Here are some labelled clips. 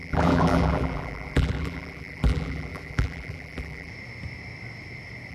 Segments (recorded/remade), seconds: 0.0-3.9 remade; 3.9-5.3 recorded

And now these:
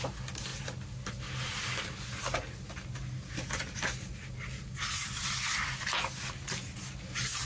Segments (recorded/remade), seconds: 0.0-7.5 recorded